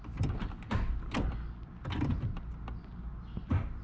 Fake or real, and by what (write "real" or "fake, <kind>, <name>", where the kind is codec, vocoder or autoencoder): real